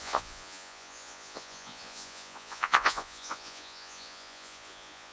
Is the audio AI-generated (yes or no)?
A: yes